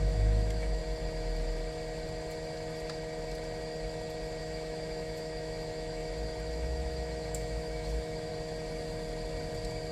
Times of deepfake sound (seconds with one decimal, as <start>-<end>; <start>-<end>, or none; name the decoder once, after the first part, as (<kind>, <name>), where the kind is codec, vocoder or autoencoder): 0.0-0.8 (autoencoder, DAC-VAE); 4.4-6.0; 6.5-8.3